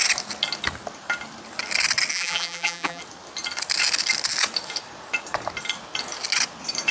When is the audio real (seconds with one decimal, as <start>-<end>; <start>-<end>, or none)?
0.0-2.1; 3.0-6.9